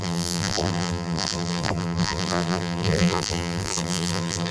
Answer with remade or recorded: remade